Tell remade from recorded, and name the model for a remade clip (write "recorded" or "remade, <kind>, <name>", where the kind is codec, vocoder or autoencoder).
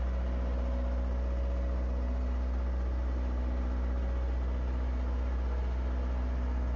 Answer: recorded